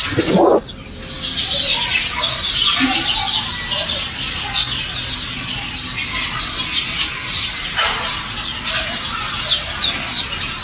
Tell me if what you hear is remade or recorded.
recorded